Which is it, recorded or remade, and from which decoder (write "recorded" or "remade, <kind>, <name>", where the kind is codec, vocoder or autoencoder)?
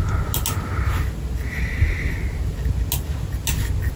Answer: recorded